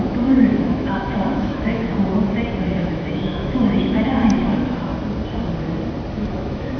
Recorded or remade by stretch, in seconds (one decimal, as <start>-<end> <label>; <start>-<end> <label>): 0.0-1.9 remade; 1.9-2.8 recorded; 2.8-4.9 remade; 4.9-6.2 recorded; 6.2-6.8 remade